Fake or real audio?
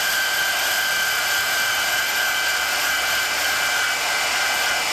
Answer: real